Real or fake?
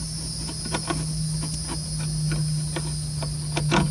real